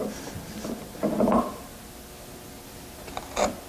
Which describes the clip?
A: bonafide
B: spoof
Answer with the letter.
A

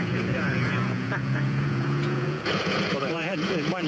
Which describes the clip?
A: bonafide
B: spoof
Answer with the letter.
B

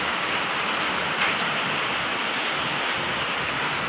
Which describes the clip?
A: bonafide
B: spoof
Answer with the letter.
A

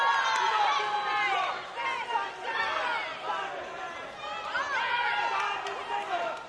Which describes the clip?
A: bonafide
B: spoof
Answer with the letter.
A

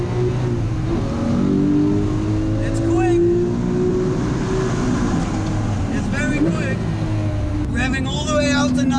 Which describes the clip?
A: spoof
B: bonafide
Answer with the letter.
B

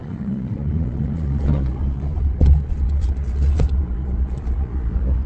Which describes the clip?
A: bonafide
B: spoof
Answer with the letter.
B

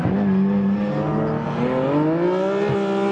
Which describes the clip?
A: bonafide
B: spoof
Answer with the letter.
A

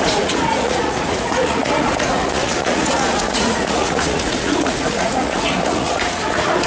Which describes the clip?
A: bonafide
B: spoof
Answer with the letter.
B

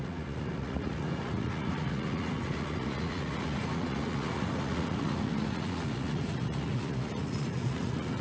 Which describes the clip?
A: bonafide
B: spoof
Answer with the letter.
B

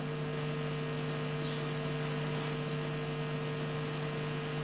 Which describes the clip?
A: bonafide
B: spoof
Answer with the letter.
A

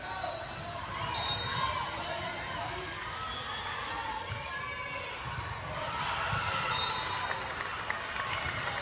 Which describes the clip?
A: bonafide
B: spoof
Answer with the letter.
A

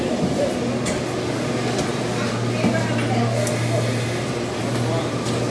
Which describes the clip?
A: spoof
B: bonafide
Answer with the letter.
B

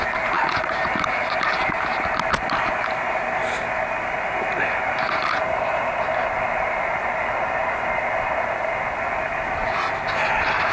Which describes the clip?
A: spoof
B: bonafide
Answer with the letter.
B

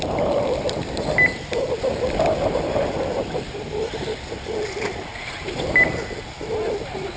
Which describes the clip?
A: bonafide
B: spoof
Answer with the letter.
A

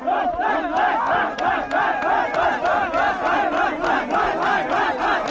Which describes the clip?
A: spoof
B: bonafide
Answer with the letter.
B